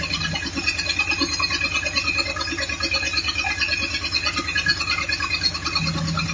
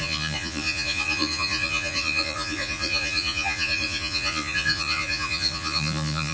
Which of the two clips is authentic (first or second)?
first